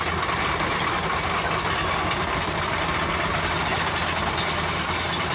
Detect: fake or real real